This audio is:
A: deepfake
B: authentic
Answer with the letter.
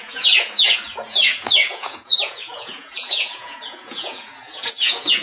A